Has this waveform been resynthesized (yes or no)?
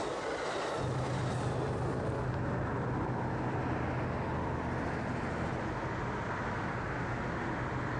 no